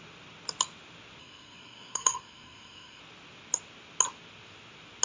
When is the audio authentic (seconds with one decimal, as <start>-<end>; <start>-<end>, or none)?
0.0-1.2; 3.0-5.0